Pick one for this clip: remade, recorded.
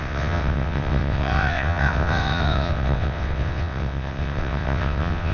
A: remade